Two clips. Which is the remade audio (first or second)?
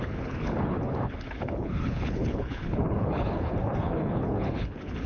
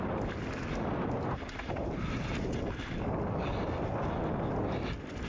first